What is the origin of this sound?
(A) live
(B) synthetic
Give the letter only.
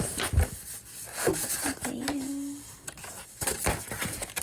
A